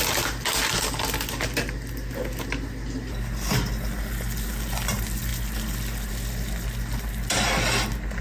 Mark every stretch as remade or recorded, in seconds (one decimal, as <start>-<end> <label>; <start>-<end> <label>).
0.0-8.2 recorded